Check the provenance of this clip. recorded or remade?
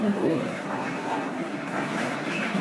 remade